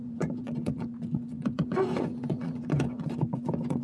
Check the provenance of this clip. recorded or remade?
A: remade